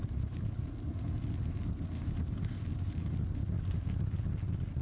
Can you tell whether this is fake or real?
real